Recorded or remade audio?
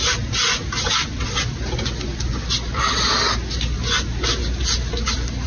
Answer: recorded